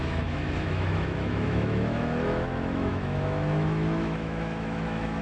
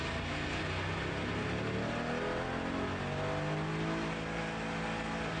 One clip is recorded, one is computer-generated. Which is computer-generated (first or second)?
first